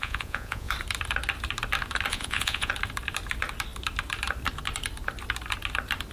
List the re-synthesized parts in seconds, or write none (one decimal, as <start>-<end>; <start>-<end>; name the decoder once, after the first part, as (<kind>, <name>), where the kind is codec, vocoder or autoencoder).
0.0-0.7 (vocoder, Vocos); 2.1-2.7